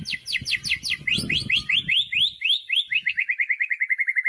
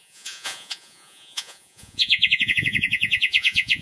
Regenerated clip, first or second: second